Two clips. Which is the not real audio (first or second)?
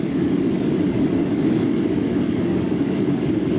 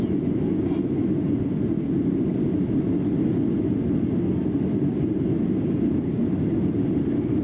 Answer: first